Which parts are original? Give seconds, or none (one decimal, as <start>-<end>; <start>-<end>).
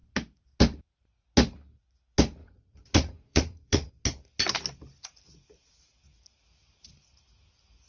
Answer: 0.0-2.4; 3.9-7.9